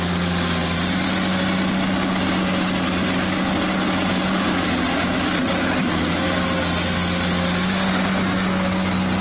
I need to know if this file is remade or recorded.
recorded